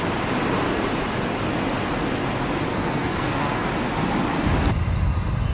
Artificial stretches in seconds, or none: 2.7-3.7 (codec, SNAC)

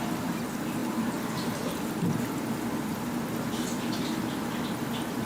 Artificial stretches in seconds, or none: none

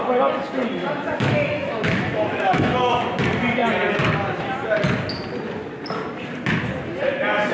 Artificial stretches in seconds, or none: 0.8-3.0 (autoencoder, DAC-VAE)

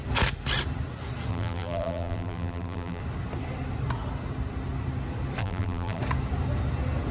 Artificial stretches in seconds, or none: 1.3-3.0 (vocoder, BigVGAN v2); 5.4-6.0

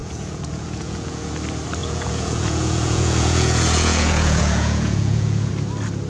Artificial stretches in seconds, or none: 0.0-1.3 (vocoder, Vocos); 1.8-5.5

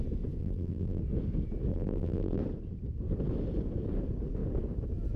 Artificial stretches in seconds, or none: 0.4-1.0 (vocoder, BigVGAN v2); 1.7-2.4